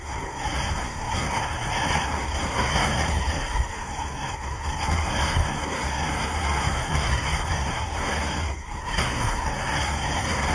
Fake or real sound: fake